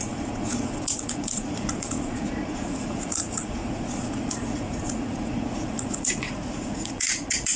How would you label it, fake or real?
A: fake